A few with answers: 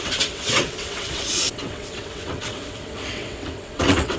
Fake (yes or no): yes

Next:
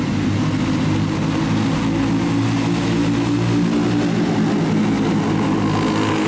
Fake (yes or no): no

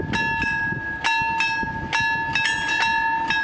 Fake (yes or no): no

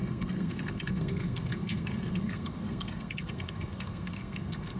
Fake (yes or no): yes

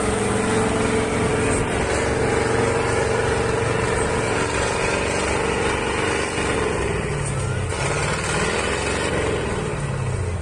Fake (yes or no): no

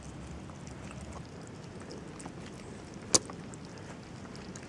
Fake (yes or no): no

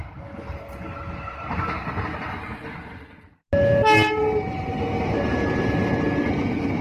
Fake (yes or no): no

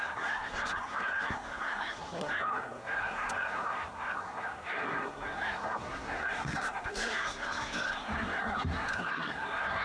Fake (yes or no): yes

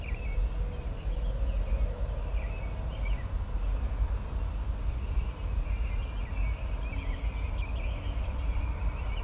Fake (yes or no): no